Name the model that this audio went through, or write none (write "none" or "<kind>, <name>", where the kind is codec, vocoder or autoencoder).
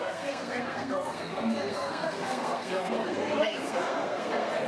codec, SNAC